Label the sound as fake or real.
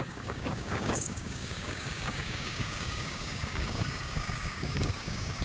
fake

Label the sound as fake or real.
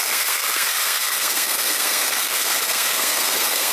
fake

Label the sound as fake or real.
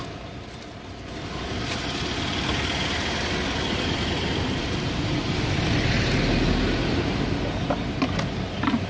real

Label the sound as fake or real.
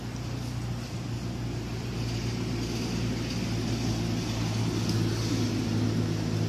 real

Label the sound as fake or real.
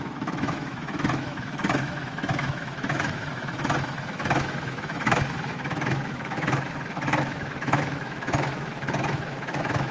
fake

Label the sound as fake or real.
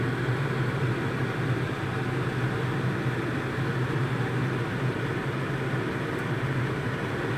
real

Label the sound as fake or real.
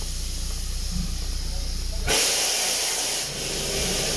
real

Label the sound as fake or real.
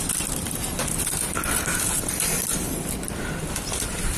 real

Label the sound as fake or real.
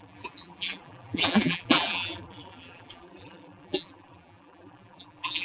fake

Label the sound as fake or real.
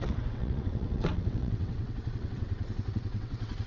fake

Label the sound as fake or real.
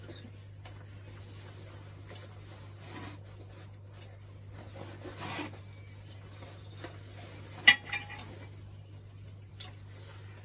real